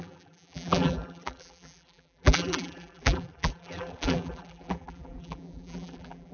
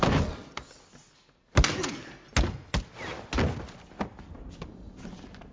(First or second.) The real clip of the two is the second